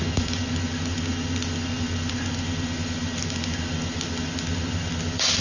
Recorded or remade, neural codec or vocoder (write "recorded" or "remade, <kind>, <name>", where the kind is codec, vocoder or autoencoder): recorded